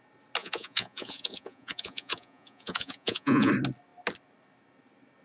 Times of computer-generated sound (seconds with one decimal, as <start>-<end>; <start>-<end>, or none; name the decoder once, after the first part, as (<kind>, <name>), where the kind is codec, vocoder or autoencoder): 0.4-3.5 (vocoder, Vocos)